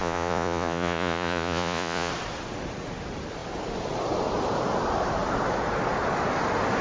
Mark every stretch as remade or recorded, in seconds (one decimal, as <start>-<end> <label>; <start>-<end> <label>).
0.0-2.1 remade; 2.1-6.8 recorded